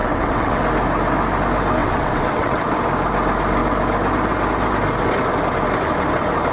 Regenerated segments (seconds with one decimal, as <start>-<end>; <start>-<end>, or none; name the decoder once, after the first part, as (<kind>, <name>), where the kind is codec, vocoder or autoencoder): 0.0-0.6 (vocoder, WaveNeXt); 1.8-2.6

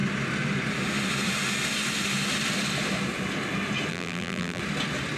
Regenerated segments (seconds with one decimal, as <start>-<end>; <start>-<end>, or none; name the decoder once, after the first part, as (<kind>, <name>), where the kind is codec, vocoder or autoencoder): 3.9-4.6 (vocoder, BigVGAN v2)

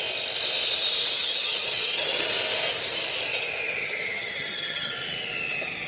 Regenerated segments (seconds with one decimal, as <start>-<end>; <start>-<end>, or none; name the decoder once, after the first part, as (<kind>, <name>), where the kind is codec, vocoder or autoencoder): 1.2-2.3 (vocoder, HiFi-GAN); 3.8-4.9

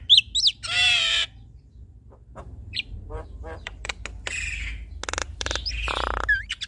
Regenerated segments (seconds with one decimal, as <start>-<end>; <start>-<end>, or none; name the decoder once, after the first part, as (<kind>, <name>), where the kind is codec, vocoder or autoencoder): 0.5-3.9 (vocoder, BigVGAN v2); 5.2-5.7

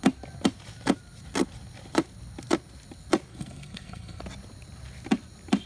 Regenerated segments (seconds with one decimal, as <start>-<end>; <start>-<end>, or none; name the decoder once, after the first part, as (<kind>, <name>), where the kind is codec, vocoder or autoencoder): 3.3-4.2 (codec, SNAC)

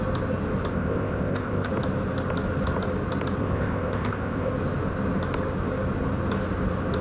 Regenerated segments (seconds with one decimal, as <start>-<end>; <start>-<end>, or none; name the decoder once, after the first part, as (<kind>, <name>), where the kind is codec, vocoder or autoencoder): 0.7-1.7 (codec, ZipCodec); 3.4-4.5